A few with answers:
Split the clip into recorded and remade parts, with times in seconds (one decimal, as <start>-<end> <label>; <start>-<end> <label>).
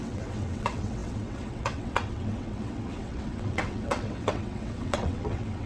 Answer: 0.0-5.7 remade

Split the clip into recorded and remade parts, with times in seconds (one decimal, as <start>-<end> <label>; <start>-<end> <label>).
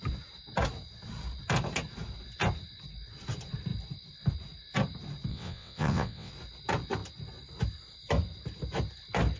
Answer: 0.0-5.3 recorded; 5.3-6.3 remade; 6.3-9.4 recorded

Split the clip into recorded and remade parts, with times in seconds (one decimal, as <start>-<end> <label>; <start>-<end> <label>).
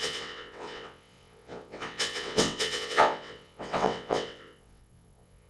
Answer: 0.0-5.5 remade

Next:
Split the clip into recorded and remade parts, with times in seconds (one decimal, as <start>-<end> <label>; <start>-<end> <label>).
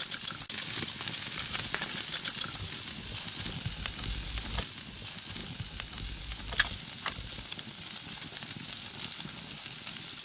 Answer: 0.0-10.2 recorded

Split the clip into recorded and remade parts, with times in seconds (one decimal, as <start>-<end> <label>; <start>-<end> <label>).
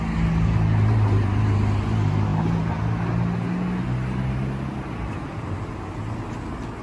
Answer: 0.0-6.8 recorded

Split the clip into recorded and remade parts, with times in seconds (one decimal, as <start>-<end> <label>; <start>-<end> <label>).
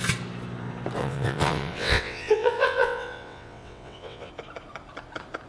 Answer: 0.0-1.0 recorded; 1.0-4.3 remade; 4.3-5.5 recorded